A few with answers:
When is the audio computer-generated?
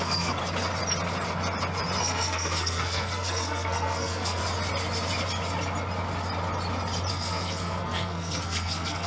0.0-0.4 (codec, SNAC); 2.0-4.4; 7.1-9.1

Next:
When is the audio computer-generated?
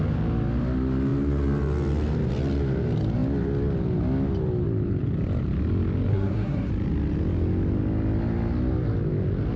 6.1-6.7 (codec, SNAC)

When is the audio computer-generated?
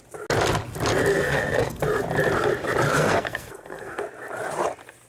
1.1-1.8 (codec, SNAC); 2.9-4.0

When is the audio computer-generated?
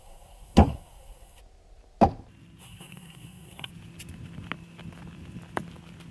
0.0-1.4 (codec, SNAC); 2.6-3.7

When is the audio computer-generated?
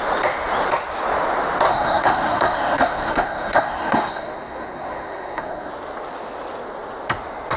1.7-5.7 (codec, SNAC)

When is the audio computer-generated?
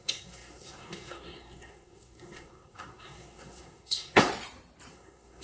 0.0-4.3 (codec, SNAC); 4.9-5.4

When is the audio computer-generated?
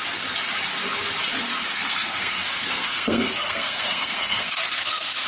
1.7-5.3 (codec, SNAC)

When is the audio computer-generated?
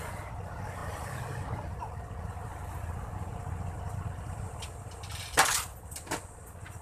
none